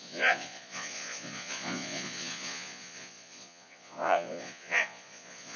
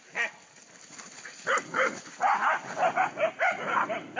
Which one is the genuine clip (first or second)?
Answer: second